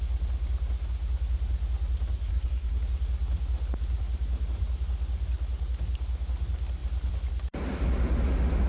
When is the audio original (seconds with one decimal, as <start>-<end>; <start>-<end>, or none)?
0.0-2.3; 2.8-8.7